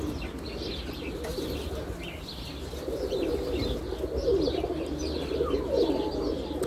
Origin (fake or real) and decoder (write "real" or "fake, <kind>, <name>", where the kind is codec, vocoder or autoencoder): real